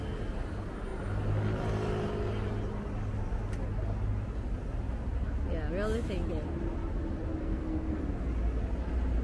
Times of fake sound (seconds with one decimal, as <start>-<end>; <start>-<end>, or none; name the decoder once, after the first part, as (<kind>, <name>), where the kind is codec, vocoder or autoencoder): 7.4-8.0 (codec, SNAC)